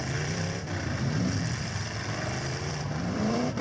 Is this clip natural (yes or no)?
no